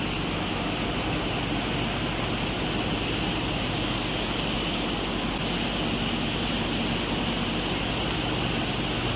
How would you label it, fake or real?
real